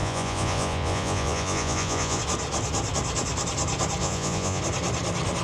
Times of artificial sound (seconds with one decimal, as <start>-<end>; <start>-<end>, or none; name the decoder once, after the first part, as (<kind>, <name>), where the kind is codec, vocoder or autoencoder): 0.0-2.2 (vocoder, Vocos); 4.0-4.6